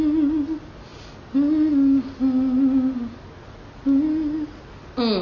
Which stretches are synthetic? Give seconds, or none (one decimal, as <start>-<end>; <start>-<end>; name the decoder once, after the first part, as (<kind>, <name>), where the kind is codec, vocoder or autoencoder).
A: none